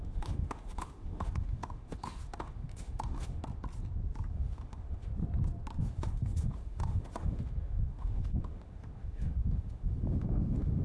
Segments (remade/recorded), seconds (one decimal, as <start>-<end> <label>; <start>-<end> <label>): 0.0-3.4 remade; 3.4-4.3 recorded; 4.3-5.1 remade; 5.1-5.8 recorded; 5.8-10.8 remade